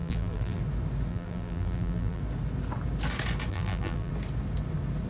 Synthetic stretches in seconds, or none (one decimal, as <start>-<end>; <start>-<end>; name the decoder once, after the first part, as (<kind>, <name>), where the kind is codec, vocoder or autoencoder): 0.0-0.6 (vocoder, BigVGAN v2); 1.1-2.2; 3.5-4.1